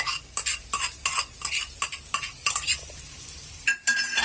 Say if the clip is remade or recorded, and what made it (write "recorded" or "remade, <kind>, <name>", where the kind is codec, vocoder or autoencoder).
recorded